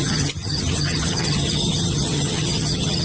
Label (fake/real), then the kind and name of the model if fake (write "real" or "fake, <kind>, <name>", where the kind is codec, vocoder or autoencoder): fake, vocoder, HiFi-GAN